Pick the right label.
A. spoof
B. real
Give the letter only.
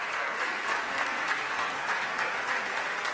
A